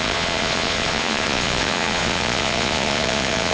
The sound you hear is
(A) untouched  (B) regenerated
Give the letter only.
B